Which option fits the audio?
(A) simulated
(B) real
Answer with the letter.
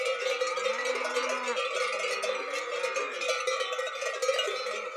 B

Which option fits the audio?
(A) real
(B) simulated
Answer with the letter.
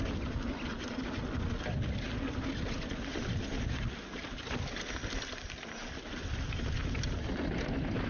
A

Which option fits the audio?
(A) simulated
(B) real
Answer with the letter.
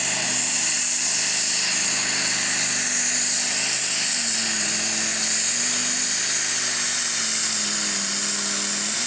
B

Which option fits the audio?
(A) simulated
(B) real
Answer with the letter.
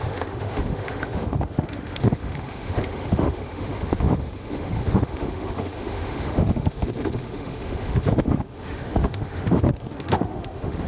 A